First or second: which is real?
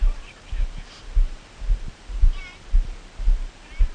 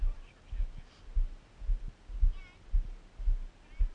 second